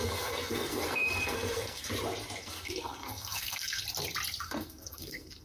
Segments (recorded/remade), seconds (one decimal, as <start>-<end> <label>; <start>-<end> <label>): 0.0-1.9 remade; 1.9-2.4 recorded; 2.4-3.8 remade; 3.8-4.4 recorded; 4.4-5.4 remade